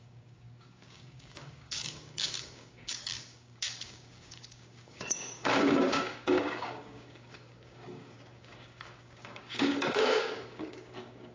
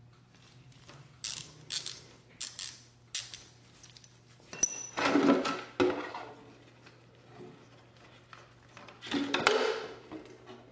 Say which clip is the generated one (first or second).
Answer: first